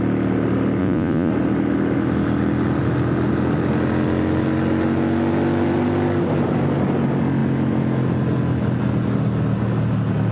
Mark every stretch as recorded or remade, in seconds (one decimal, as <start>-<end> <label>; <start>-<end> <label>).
0.0-0.8 recorded; 0.8-1.3 remade; 1.3-10.3 recorded